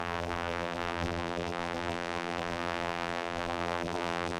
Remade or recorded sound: remade